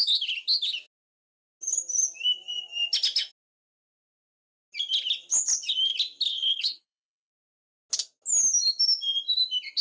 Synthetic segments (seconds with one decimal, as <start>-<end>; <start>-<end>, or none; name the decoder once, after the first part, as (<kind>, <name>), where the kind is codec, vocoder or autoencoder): 6.3-7.3 (codec, HILCodec)